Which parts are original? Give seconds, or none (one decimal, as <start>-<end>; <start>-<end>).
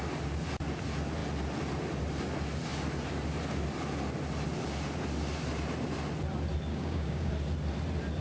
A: 0.0-6.7; 7.3-8.2